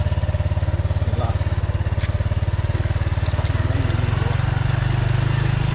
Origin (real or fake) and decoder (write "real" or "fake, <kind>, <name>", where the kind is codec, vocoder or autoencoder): real